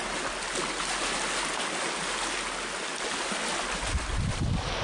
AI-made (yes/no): no